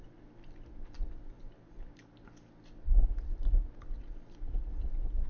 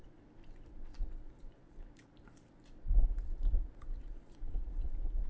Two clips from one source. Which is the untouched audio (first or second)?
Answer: first